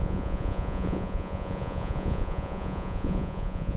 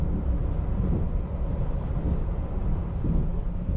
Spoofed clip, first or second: first